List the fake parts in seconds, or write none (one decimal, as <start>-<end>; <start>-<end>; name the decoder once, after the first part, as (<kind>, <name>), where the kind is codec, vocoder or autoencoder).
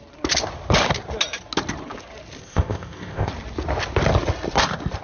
2.4-3.3 (codec, ZipCodec)